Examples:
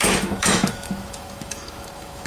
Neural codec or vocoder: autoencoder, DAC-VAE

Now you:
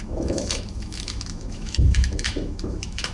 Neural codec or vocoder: autoencoder, DAC-VAE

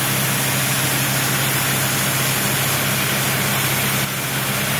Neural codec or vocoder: none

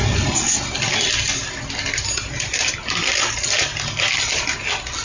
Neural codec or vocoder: none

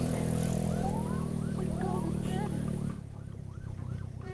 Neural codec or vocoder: vocoder, BigVGAN v2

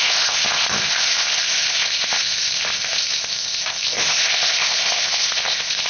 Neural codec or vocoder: codec, ZipCodec